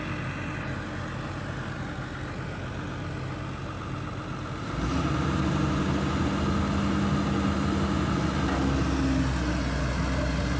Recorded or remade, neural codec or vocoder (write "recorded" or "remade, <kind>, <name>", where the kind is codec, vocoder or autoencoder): recorded